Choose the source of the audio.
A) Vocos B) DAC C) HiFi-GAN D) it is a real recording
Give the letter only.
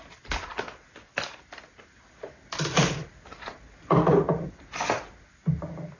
D